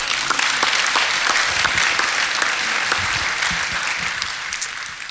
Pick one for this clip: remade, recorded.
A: recorded